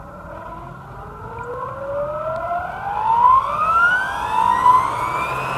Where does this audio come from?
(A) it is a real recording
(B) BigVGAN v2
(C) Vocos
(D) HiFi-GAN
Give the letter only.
A